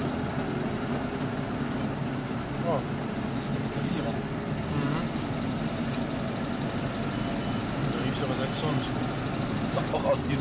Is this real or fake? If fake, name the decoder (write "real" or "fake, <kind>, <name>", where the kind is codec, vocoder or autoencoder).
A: real